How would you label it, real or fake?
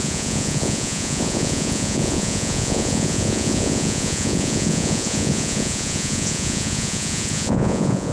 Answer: fake